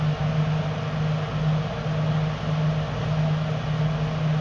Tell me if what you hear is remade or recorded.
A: recorded